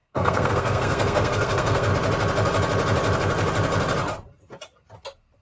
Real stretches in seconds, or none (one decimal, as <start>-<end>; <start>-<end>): 1.9-5.4